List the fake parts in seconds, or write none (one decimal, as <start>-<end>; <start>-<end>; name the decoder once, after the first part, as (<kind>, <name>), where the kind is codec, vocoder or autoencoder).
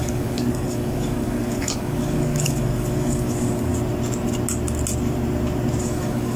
0.0-3.7 (codec, DAC); 5.8-6.4